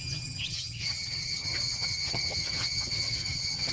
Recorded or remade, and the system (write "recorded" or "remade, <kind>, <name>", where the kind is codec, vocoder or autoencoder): remade, vocoder, HiFi-GAN